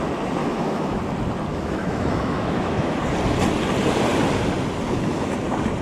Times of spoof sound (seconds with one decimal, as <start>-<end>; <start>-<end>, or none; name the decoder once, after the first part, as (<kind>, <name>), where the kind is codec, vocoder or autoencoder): 0.4-1.0 (autoencoder, DAC-VAE); 1.5-3.0